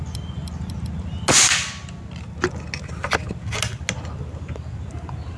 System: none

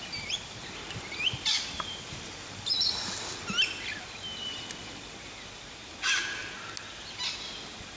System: none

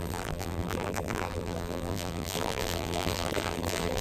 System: vocoder, BigVGAN v2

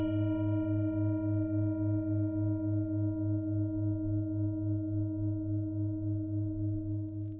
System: none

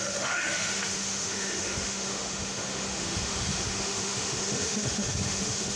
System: autoencoder, DAC-VAE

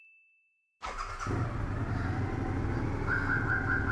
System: none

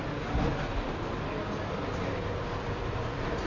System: none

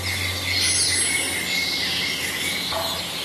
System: none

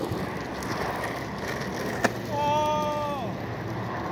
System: none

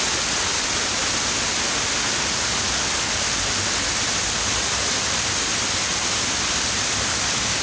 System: none